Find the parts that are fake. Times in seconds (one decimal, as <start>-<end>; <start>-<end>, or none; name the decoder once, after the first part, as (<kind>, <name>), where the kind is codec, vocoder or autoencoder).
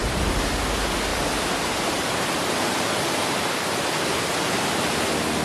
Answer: 0.0-0.5 (vocoder, BigVGAN v2); 1.1-2.5